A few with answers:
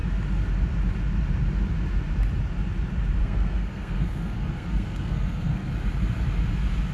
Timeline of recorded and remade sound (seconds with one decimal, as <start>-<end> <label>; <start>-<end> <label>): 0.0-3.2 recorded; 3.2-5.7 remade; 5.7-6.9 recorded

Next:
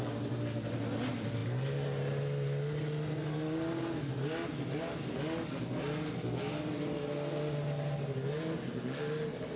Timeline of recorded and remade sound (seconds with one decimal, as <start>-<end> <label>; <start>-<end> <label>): 0.0-9.6 recorded

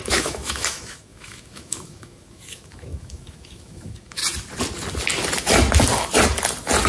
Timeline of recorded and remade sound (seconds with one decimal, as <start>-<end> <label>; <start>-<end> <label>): 0.0-4.2 remade; 4.2-6.9 recorded